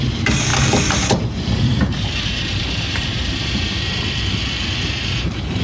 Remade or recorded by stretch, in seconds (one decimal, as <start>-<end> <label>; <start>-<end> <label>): 0.0-0.5 recorded; 0.5-3.9 remade; 3.9-5.6 recorded